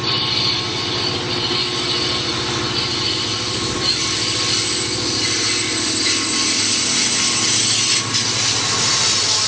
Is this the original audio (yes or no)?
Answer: yes